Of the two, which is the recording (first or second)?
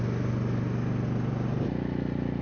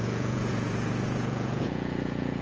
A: first